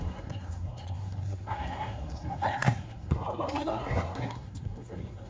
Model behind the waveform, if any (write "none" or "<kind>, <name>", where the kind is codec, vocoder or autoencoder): codec, SNAC